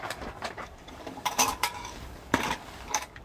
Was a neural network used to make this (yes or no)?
yes